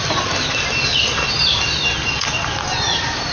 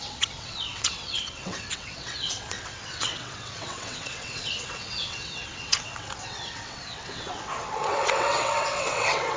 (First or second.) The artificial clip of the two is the second